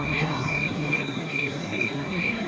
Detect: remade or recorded remade